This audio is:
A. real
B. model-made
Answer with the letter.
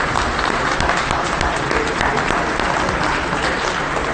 A